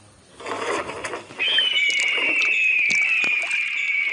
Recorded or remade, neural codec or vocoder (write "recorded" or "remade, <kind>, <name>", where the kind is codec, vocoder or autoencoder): recorded